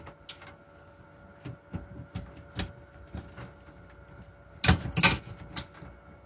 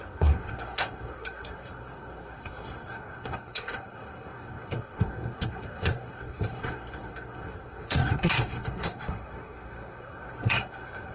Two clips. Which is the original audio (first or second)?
first